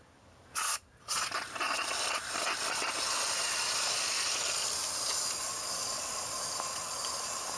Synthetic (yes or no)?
no